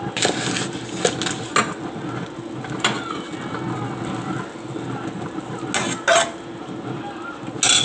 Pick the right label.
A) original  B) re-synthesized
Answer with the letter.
A